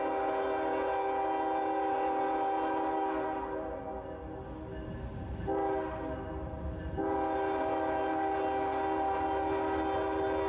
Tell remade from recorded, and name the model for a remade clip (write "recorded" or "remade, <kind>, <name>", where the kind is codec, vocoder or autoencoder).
recorded